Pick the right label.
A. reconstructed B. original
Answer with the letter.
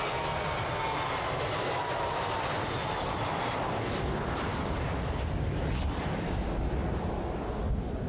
B